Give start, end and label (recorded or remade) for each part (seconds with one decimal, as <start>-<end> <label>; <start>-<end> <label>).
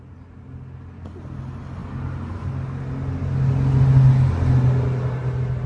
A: 0.0-5.7 recorded